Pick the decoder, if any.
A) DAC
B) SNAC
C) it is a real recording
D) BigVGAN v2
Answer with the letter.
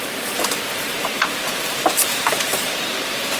D